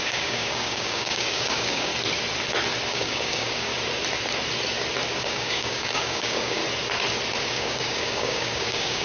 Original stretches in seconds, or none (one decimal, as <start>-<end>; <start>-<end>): 1.9-2.9; 3.7-5.2; 6.6-7.4